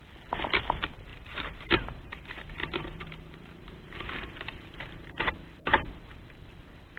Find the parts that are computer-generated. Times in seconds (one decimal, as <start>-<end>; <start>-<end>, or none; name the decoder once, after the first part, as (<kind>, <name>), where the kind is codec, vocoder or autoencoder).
1.1-5.3 (vocoder, BigVGAN v2)